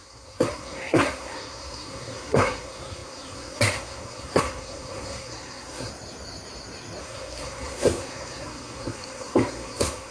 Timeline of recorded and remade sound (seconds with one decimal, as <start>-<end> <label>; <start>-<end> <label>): 0.0-5.9 remade; 5.9-7.0 recorded; 7.0-10.1 remade